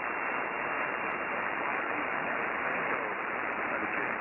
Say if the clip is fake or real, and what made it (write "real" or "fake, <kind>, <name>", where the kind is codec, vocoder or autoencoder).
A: fake, vocoder, BigVGAN v2